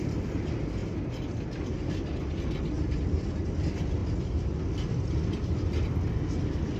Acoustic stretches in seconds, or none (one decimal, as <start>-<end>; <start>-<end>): 0.0-6.8